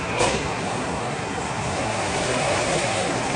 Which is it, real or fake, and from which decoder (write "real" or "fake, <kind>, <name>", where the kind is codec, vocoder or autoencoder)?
fake, codec, SNAC